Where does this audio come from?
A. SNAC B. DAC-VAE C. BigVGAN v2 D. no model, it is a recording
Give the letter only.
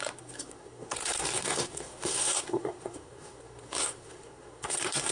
A